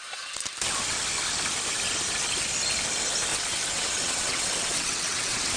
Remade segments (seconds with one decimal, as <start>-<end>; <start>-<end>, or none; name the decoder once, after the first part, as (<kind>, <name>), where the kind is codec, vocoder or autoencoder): 3.3-5.6 (vocoder, WaveNeXt)